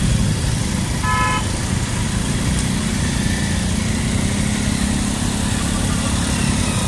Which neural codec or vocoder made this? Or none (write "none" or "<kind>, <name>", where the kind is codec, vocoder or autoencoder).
none